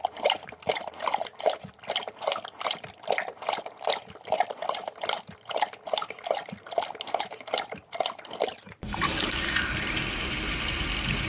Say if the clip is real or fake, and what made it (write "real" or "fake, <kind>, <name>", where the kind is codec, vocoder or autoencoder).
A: real